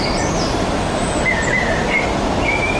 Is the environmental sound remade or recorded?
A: remade